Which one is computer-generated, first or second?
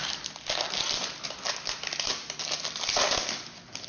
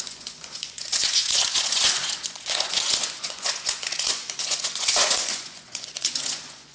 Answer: second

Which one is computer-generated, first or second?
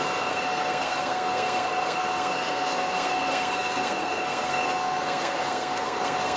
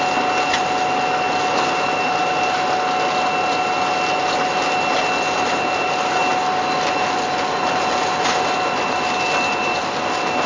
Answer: first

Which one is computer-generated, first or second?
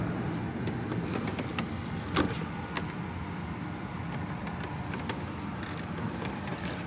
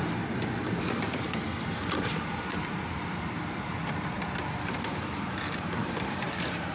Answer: second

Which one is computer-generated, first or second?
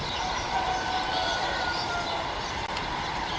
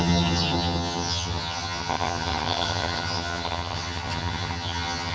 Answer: second